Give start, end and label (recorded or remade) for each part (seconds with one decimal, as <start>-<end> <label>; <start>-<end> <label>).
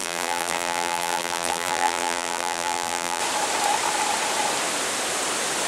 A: 0.0-3.2 remade; 3.2-5.7 recorded